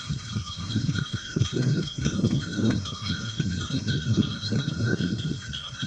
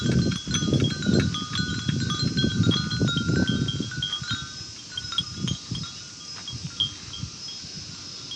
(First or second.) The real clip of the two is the second